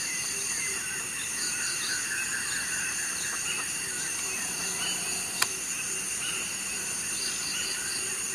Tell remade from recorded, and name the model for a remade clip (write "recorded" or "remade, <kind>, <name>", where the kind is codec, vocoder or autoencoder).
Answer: recorded